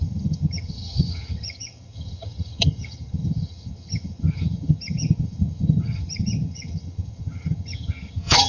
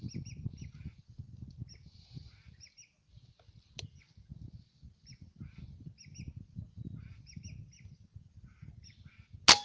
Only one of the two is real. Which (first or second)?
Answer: second